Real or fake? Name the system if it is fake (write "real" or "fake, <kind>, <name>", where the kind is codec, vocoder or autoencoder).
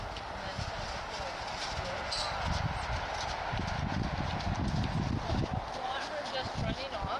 real